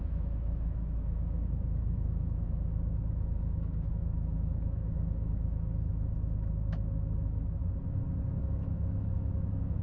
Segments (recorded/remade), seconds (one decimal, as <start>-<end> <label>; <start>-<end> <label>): 0.0-7.6 remade; 7.6-8.4 recorded; 8.4-9.8 remade